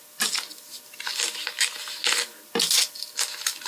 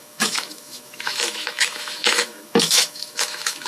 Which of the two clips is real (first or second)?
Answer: first